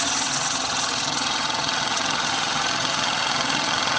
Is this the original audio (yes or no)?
no